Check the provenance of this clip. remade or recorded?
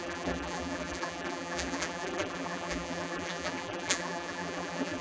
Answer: remade